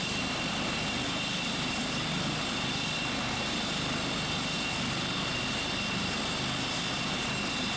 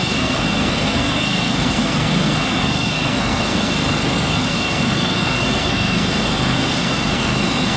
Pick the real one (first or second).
first